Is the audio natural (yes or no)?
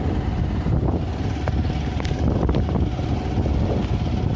yes